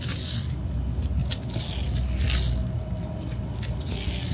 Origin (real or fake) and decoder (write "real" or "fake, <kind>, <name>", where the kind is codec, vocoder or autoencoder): real